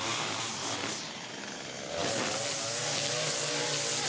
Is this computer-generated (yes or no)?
no